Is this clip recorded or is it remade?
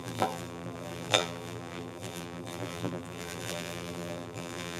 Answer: remade